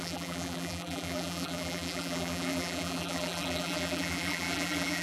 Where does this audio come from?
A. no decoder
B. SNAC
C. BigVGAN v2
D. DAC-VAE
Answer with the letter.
C